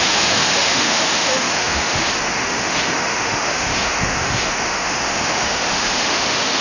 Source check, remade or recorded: remade